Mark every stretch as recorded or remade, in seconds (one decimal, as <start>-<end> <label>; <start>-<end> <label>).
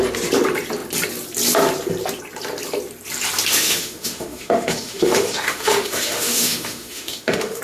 0.0-3.5 recorded; 3.5-7.6 remade